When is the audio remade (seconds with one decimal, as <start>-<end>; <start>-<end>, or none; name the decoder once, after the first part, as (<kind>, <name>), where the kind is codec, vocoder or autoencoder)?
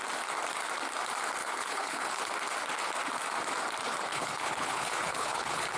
1.4-2.3 (codec, HILCodec); 4.1-5.8